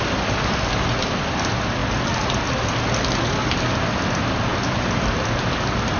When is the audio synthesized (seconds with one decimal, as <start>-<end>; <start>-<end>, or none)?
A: none